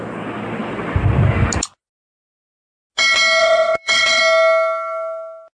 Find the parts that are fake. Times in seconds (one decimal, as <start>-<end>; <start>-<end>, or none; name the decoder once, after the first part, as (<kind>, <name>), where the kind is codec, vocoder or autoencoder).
3.4-4.2 (vocoder, WaveNeXt)